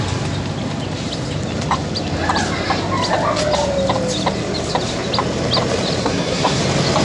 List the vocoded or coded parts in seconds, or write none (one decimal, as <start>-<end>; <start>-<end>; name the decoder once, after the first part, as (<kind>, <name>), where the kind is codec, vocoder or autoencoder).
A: 6.0-6.6 (codec, SNAC)

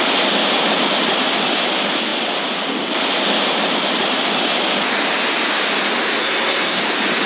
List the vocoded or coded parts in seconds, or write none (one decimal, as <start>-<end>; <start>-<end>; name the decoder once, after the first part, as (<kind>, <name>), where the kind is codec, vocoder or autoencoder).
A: 6.2-6.8 (codec, SNAC)

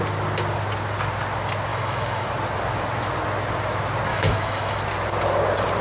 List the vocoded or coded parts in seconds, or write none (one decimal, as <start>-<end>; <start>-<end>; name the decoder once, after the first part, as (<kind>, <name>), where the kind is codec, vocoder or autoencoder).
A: 1.7-2.3 (autoencoder, DAC-VAE); 4.1-4.8

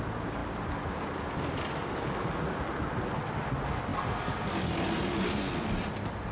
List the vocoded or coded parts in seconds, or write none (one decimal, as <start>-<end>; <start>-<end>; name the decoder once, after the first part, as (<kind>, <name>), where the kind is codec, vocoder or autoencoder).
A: none